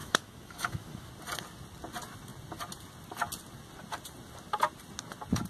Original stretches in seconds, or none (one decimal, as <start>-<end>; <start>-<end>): 1.1-5.5